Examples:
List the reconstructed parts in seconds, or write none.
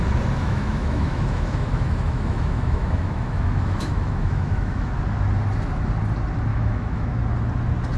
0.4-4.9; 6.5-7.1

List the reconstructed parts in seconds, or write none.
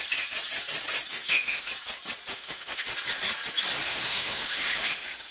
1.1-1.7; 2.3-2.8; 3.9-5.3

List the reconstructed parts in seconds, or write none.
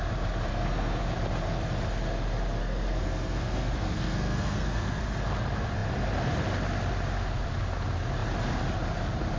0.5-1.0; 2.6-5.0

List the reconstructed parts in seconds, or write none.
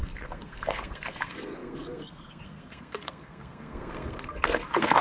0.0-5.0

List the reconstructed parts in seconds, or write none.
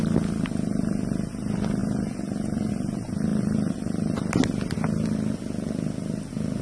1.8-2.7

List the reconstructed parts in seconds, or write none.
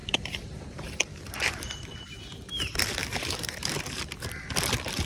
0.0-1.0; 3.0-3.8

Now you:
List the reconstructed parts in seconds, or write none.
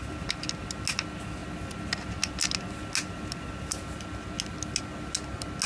none